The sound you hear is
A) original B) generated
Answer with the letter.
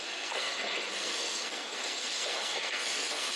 B